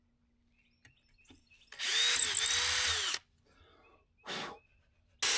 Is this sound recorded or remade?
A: recorded